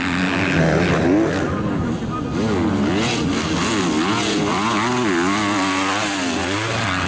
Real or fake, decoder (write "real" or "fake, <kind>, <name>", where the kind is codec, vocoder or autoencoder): real